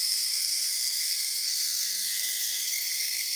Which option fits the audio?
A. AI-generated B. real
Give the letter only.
A